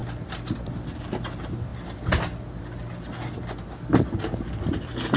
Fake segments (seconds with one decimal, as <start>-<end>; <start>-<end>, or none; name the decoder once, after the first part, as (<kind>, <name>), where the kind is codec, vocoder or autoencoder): none